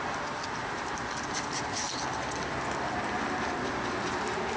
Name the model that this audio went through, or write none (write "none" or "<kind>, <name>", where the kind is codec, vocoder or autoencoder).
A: none